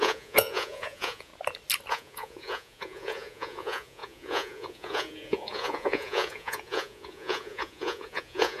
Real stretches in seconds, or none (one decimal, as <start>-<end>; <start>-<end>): 1.3-1.9